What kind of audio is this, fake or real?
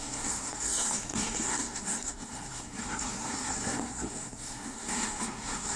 fake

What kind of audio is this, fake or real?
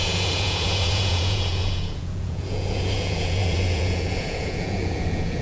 fake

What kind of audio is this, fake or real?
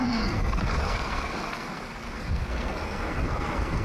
fake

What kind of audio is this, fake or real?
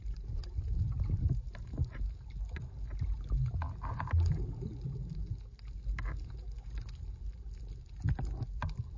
real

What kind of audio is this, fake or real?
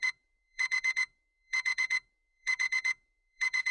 fake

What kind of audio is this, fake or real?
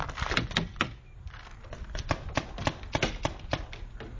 real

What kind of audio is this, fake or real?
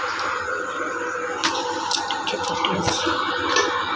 real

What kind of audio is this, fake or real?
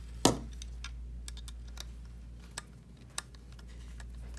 real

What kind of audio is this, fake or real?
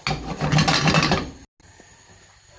real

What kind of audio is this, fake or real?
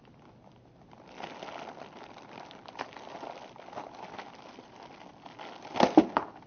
real